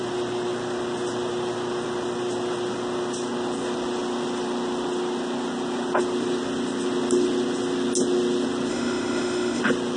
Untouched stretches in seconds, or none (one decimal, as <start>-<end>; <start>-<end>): 0.0-8.7; 9.6-10.0